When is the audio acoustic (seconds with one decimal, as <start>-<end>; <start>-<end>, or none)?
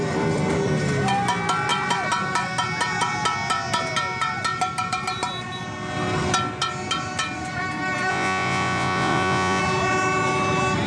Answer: 0.0-8.1; 9.6-10.9